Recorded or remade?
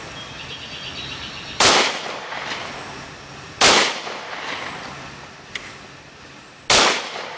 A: recorded